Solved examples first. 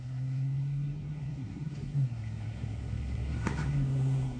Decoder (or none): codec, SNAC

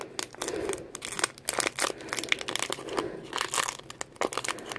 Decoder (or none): none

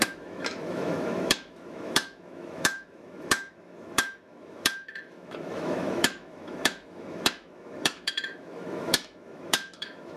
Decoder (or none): autoencoder, DAC-VAE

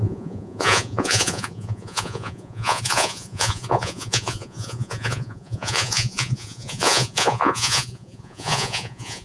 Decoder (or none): vocoder, Vocos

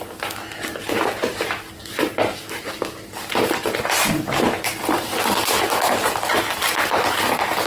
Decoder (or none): none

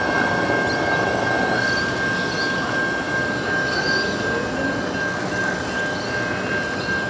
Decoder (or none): none